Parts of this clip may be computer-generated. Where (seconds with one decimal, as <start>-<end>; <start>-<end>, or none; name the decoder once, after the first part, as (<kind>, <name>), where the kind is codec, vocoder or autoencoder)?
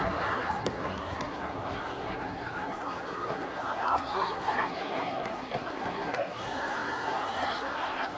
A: 0.0-8.2 (codec, SNAC)